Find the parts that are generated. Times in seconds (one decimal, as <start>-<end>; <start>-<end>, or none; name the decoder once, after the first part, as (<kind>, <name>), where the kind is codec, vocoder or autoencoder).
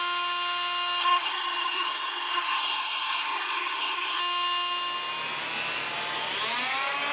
1.0-4.2 (codec, SNAC)